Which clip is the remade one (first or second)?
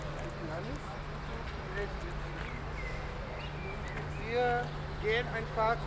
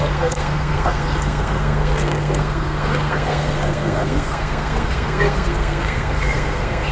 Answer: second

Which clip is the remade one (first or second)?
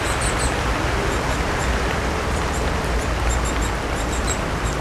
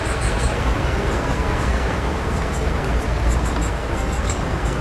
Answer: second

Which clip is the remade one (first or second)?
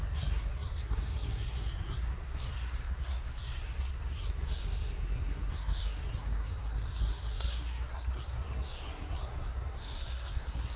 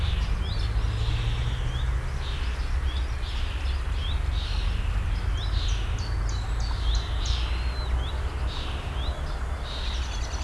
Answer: first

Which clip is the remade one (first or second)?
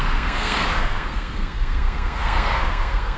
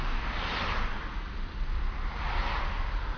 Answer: first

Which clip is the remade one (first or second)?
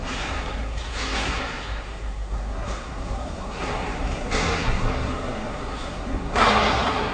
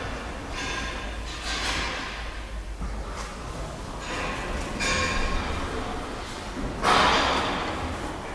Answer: first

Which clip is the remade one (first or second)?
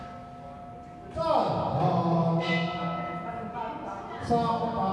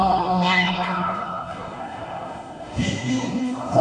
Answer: second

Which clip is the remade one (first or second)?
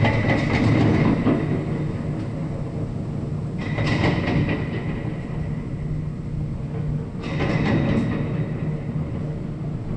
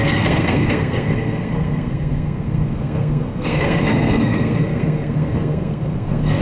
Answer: second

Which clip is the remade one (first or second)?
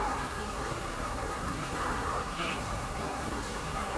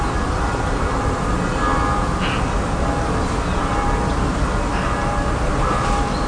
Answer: first